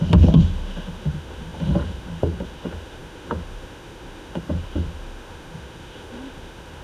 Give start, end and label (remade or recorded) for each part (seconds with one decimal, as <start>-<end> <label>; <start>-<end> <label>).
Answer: 0.0-6.8 remade